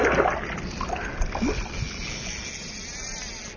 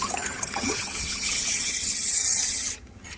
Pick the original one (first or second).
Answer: first